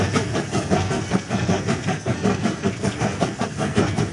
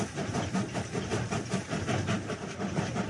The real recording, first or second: second